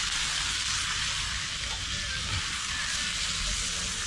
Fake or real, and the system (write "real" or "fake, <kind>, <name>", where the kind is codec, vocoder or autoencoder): real